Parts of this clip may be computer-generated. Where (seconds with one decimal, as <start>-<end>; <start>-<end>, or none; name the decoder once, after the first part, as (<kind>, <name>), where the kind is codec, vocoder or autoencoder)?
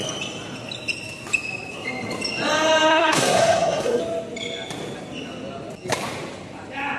2.9-4.0 (codec, SNAC)